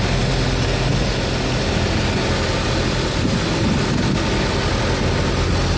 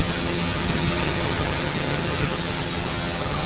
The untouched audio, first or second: first